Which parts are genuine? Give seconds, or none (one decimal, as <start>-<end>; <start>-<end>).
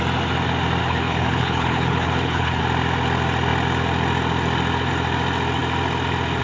0.0-0.8; 2.6-6.4